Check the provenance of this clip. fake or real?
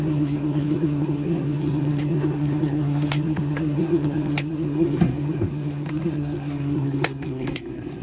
fake